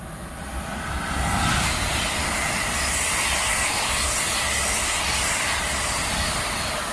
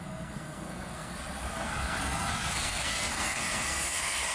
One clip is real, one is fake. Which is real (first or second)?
first